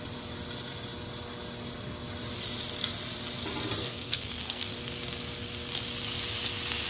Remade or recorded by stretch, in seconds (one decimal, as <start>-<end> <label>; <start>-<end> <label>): 0.0-3.8 recorded; 3.8-4.7 remade; 4.7-6.9 recorded